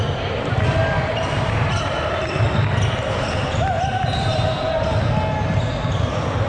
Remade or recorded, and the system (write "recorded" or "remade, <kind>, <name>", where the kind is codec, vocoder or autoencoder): recorded